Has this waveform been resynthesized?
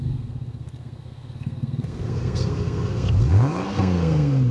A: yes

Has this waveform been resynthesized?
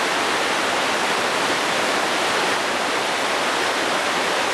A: no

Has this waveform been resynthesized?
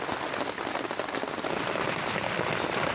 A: no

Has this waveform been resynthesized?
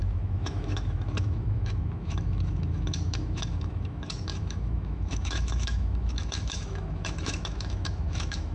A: yes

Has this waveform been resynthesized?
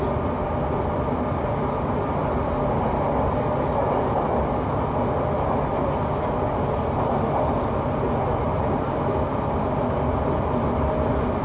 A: no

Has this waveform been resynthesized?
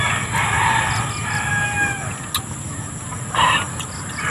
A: no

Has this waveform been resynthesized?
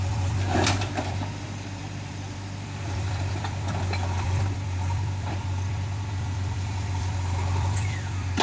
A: yes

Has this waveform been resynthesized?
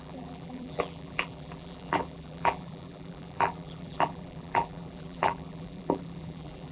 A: yes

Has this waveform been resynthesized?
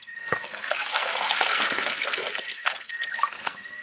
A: yes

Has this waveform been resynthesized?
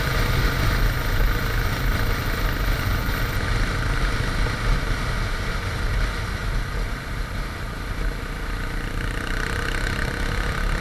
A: no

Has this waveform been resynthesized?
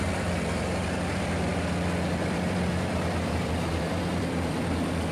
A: yes